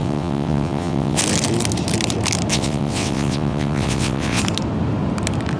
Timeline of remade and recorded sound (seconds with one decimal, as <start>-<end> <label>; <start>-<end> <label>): 0.0-1.2 remade; 1.2-2.5 recorded; 2.5-4.4 remade; 4.4-5.6 recorded